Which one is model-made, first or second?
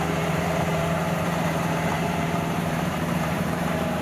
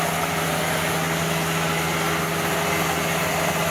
first